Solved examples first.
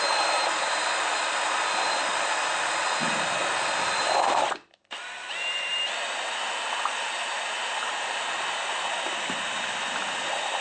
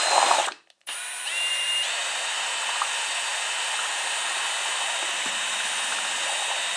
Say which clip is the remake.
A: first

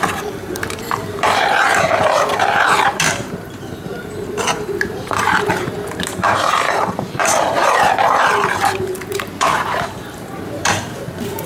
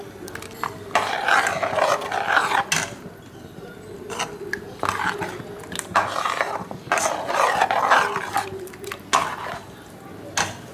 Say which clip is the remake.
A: first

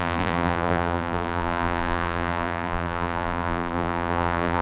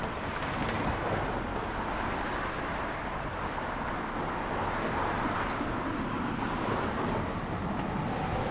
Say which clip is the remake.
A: first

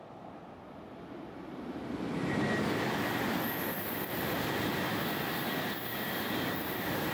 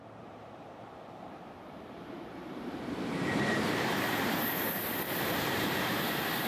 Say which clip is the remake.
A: second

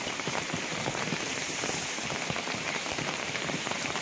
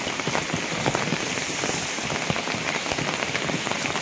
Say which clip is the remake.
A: first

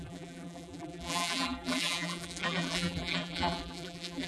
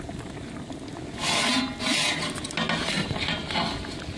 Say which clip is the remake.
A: first